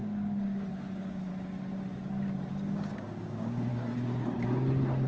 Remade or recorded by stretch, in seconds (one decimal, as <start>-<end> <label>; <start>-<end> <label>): 0.0-1.3 remade; 1.3-2.5 recorded; 2.5-3.7 remade; 3.7-5.1 recorded